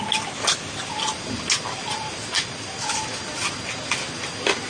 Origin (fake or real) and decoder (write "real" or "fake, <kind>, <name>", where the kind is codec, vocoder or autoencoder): real